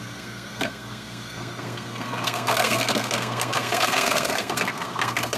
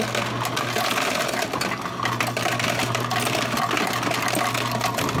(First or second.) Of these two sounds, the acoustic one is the second